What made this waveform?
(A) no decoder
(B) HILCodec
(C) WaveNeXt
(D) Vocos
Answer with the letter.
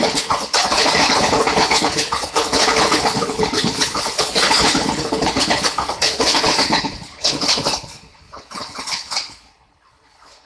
B